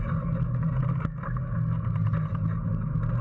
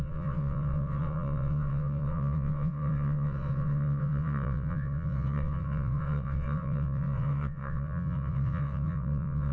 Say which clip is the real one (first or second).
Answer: first